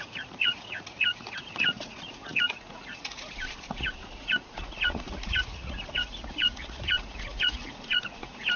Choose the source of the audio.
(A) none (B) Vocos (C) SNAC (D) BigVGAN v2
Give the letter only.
B